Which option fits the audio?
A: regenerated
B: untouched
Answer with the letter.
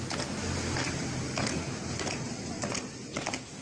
B